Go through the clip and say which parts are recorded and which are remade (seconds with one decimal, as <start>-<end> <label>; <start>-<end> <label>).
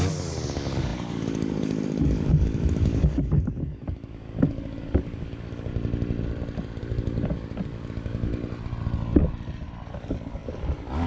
0.0-5.7 remade; 5.7-6.8 recorded; 6.8-8.3 remade; 8.3-9.9 recorded; 9.9-11.1 remade